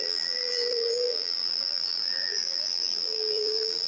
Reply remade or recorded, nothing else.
remade